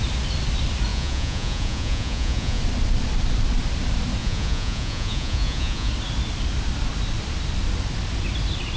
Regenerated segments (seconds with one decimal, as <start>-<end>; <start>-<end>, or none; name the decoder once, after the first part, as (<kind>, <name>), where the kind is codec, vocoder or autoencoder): 0.9-2.6 (vocoder, Vocos); 4.2-5.9